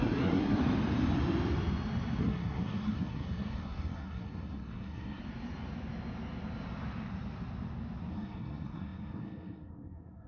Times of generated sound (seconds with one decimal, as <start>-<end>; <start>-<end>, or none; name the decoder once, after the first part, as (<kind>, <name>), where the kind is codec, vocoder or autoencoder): 0.0-0.6 (codec, SNAC); 2.2-5.2; 8.1-10.3